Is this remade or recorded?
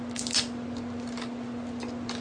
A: recorded